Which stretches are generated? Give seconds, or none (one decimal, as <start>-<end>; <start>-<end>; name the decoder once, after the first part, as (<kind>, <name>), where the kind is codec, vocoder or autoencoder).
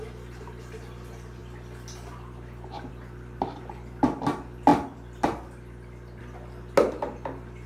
none